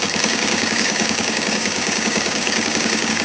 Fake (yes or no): yes